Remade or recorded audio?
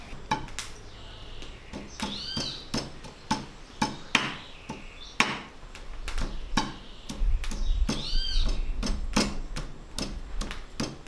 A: recorded